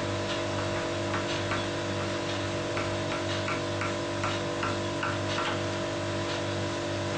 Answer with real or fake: real